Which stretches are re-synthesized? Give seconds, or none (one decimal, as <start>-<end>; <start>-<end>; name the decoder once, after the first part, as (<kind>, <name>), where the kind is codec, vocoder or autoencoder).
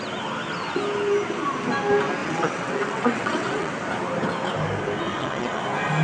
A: 2.2-3.7 (vocoder, WaveNeXt); 5.1-5.6